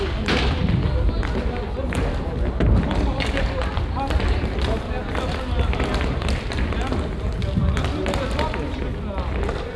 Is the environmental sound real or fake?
real